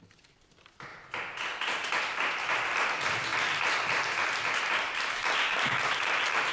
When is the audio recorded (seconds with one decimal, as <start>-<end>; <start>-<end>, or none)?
0.9-1.9; 3.3-4.6